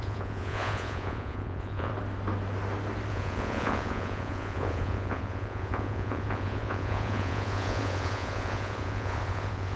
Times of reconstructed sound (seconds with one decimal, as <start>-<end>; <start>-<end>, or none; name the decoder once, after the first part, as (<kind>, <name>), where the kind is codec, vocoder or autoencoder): 0.0-1.9 (vocoder, Vocos); 3.1-9.8